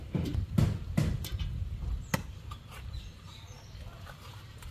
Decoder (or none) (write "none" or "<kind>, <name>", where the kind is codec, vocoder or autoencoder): none